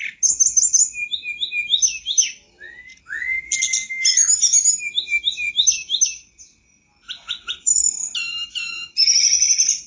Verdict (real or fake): real